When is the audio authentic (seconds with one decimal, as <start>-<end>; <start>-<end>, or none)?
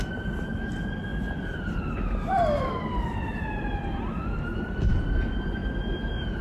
0.0-6.4